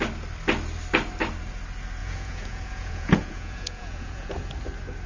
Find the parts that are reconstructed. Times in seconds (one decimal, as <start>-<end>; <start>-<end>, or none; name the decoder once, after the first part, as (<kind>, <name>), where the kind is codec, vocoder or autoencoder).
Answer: 2.0-4.5 (vocoder, Vocos)